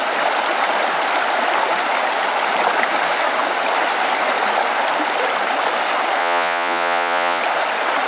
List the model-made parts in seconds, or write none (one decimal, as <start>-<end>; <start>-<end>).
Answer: 6.2-7.4